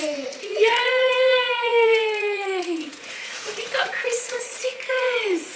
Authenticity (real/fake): fake